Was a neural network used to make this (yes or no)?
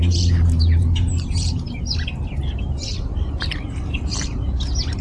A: yes